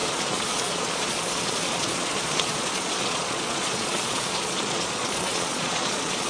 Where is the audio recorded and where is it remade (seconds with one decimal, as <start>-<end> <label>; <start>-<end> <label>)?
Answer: 0.0-6.3 remade